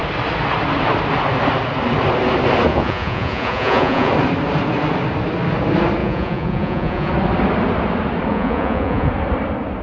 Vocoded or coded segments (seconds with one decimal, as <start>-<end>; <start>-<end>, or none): 2.7-4.1; 6.0-7.1; 8.3-9.1